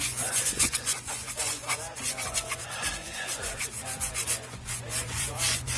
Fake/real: fake